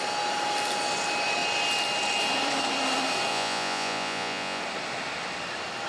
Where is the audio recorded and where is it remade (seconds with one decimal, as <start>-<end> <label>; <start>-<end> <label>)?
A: 0.0-3.3 recorded; 3.3-4.6 remade; 4.6-5.9 recorded